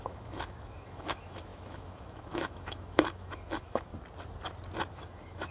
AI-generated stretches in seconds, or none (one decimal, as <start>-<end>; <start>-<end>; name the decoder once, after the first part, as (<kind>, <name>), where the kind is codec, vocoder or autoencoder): 0.0-3.9 (autoencoder, DAC-VAE); 4.9-5.5